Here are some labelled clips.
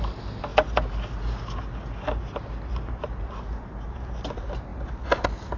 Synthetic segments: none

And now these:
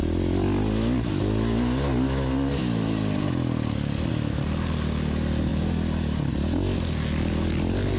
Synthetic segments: none

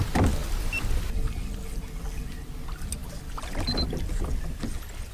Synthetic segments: none

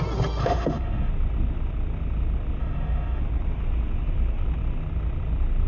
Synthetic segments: 0.4-1.1 (autoencoder, DAC-VAE); 2.6-3.2

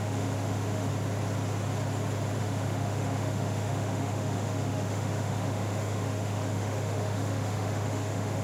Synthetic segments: 0.0-0.9 (autoencoder, DAC-VAE); 2.4-8.4

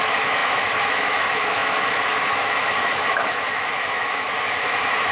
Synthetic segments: 0.0-5.1 (autoencoder, DAC-VAE)

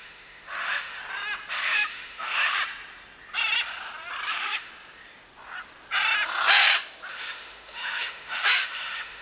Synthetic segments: 0.0-1.0 (autoencoder, DAC-VAE); 1.5-2.6; 4.3-4.7; 7.1-9.2

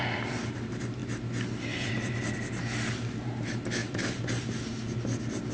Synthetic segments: none